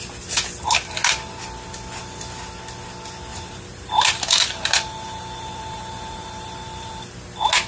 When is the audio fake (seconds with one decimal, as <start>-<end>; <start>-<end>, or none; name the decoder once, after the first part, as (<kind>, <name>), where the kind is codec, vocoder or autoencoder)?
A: 3.3-6.9 (vocoder, BigVGAN v2)